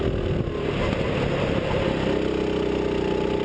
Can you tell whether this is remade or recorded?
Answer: recorded